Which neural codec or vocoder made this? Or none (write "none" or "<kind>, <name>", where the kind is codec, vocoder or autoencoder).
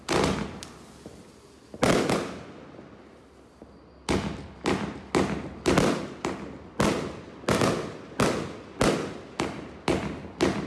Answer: none